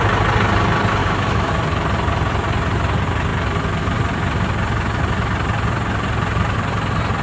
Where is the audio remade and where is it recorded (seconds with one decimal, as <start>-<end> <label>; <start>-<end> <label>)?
0.0-1.0 recorded; 1.0-1.5 remade; 1.5-7.2 recorded